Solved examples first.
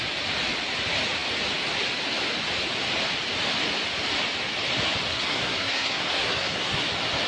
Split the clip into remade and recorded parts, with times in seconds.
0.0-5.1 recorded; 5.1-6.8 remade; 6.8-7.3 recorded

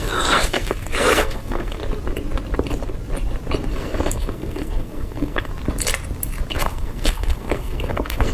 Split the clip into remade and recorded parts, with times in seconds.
0.0-1.8 remade; 1.8-3.7 recorded; 3.7-5.5 remade; 5.5-6.5 recorded; 6.5-8.3 remade

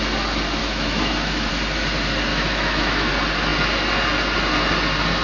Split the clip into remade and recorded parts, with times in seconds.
0.0-0.6 recorded; 0.6-1.5 remade; 1.5-2.3 recorded; 2.3-3.1 remade; 3.1-5.2 recorded

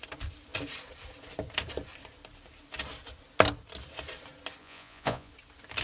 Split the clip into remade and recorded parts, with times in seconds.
0.0-4.6 recorded; 4.6-5.3 remade; 5.3-5.8 recorded

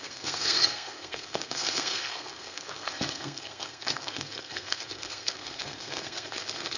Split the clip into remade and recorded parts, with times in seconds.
0.0-6.8 remade

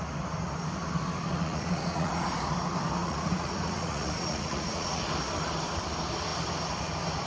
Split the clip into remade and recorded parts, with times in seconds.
0.0-1.3 recorded; 1.3-2.1 remade; 2.1-3.0 recorded; 3.0-5.0 remade; 5.0-7.3 recorded